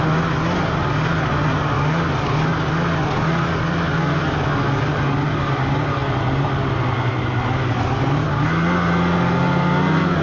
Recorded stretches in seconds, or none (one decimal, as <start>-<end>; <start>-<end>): 0.0-10.2